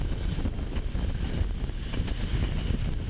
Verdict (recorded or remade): recorded